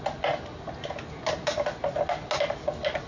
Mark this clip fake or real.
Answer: real